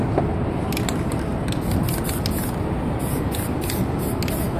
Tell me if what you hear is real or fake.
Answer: real